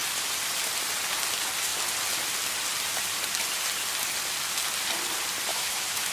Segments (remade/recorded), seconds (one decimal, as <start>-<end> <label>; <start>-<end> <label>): 0.0-5.5 recorded; 5.5-6.1 remade